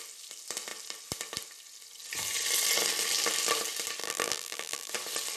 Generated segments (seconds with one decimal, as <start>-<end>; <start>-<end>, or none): 4.0-4.9

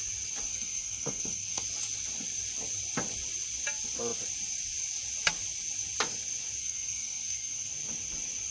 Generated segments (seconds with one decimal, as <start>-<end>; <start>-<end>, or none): 0.5-1.6; 6.6-7.7

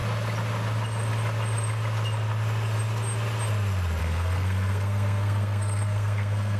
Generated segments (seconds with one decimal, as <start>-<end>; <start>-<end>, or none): 4.0-6.6